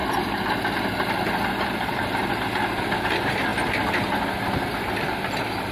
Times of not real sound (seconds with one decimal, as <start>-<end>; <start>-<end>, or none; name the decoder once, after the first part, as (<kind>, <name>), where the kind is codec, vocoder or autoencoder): 0.0-2.3 (vocoder, BigVGAN v2)